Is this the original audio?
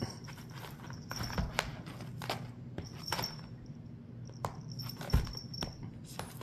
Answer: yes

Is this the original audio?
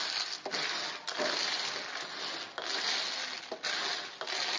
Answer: yes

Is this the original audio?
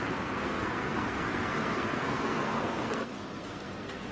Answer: no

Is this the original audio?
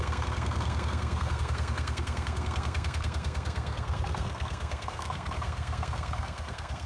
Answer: no